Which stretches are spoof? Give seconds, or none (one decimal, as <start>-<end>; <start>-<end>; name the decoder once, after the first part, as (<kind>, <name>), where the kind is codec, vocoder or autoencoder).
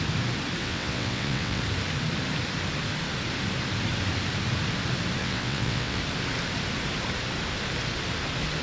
0.6-1.6 (vocoder, WaveNeXt); 5.2-6.0